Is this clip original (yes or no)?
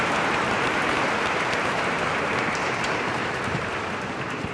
no